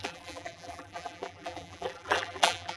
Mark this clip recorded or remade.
remade